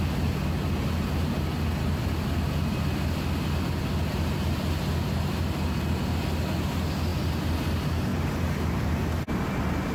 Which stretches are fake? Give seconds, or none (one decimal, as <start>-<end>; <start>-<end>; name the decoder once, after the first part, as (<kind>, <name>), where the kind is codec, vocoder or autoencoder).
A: 8.1-9.2 (vocoder, BigVGAN v2)